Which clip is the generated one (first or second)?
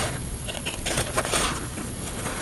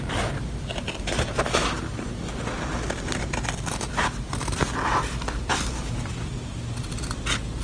first